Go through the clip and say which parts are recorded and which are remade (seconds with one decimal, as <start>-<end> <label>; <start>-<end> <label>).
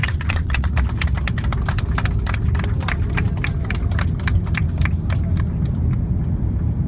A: 0.0-0.7 remade; 0.7-6.9 recorded